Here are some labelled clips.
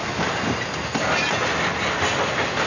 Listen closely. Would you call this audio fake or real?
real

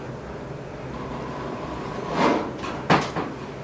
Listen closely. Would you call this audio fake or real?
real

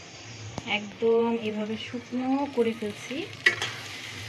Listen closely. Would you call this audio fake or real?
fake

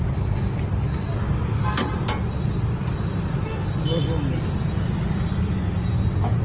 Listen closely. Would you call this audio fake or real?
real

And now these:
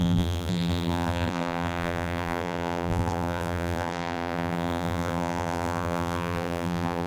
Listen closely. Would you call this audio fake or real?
fake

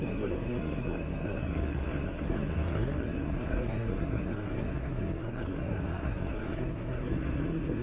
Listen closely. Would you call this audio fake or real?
fake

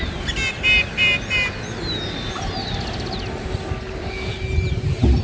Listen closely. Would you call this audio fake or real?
real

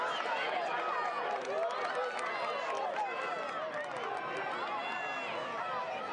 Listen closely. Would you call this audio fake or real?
real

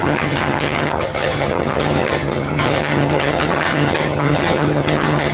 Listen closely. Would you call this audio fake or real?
fake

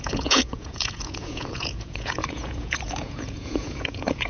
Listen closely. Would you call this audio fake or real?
fake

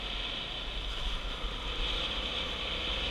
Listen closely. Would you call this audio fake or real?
real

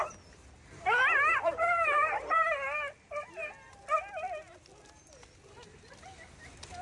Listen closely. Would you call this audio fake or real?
real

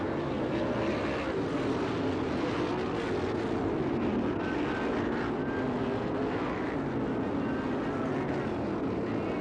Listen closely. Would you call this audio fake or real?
real